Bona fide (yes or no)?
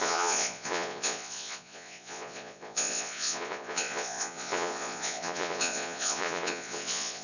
no